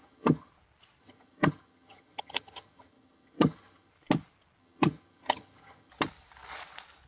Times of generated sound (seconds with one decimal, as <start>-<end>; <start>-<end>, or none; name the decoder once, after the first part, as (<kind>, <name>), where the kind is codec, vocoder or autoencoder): 0.0-0.5 (vocoder, HiFi-GAN); 1.0-3.9; 4.6-5.9